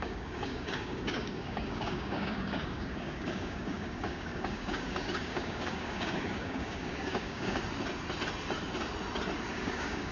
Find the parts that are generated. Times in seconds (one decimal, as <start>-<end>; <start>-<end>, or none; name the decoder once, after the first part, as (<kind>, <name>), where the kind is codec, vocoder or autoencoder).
0.0-7.6 (codec, DAC); 9.5-10.1

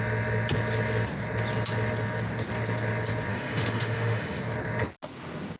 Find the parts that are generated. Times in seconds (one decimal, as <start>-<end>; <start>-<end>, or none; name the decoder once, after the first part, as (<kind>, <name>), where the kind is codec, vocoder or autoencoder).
3.3-4.4 (autoencoder, DAC-VAE)

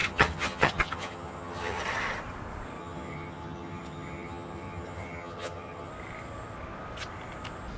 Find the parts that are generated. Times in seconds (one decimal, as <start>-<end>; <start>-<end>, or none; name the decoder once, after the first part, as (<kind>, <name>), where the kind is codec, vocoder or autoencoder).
0.0-1.8 (vocoder, HiFi-GAN); 2.8-5.9

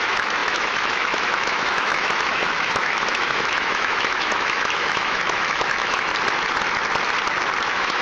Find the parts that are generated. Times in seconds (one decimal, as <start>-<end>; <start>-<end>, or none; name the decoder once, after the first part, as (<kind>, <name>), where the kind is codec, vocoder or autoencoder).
0.0-6.1 (autoencoder, DAC-VAE); 7.6-8.0

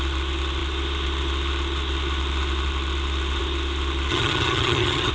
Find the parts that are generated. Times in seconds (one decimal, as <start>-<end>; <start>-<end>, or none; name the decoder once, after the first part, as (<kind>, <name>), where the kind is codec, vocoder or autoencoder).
4.1-5.1 (vocoder, HiFi-GAN)